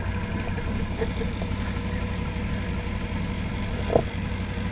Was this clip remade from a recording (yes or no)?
no